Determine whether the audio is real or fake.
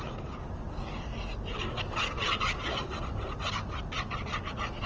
real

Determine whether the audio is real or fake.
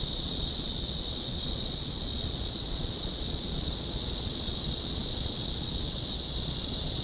fake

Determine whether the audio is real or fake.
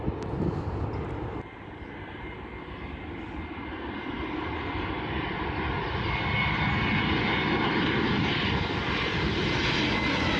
real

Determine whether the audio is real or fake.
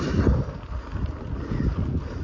real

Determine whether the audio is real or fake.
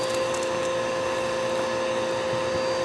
real